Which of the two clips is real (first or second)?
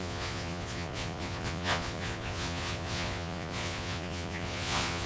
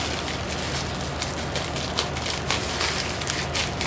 second